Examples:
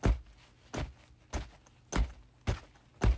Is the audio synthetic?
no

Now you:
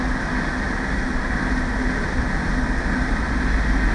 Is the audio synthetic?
no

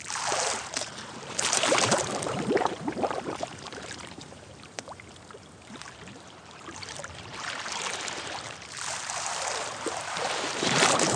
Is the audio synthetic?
yes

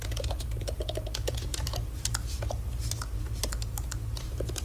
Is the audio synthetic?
yes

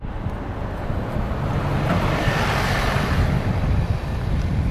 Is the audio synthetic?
no